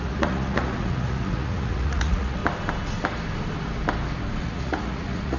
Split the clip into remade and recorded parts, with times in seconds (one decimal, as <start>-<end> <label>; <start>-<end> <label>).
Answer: 0.0-2.4 remade; 2.4-4.4 recorded; 4.4-5.4 remade

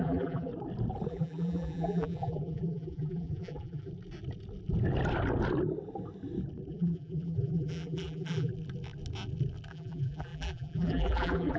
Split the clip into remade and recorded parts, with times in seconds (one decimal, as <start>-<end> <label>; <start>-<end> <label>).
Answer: 0.0-0.5 remade; 0.5-1.1 recorded; 1.1-3.9 remade; 3.9-6.7 recorded; 6.7-8.5 remade; 8.5-9.7 recorded; 9.7-11.6 remade

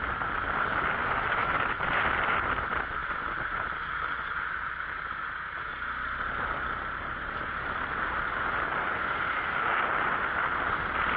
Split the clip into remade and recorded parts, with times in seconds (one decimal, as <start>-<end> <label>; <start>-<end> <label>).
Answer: 0.0-1.0 recorded; 1.0-1.8 remade; 1.8-11.2 recorded

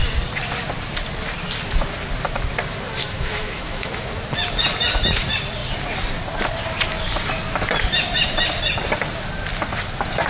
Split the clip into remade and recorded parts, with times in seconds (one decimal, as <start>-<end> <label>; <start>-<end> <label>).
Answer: 0.0-3.0 recorded; 3.0-4.2 remade; 4.2-10.3 recorded